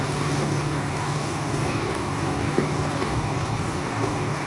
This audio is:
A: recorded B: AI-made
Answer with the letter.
B